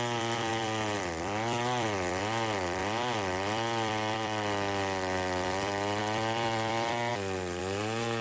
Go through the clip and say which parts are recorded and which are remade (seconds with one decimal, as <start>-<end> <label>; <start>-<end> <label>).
0.0-8.2 remade